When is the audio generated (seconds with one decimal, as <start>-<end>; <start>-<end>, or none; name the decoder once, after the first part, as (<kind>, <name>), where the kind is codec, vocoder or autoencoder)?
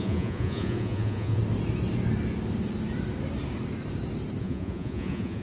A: 0.0-1.4 (vocoder, Vocos); 4.4-5.4